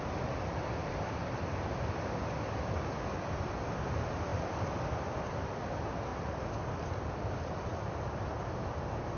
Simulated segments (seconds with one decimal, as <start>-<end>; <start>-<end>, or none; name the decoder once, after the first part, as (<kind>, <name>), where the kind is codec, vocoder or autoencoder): 0.8-3.8 (vocoder, BigVGAN v2); 4.3-5.3